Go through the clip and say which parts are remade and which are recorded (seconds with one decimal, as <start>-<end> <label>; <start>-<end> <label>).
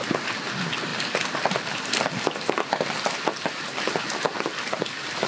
0.0-0.9 recorded; 0.9-3.8 remade; 3.8-5.3 recorded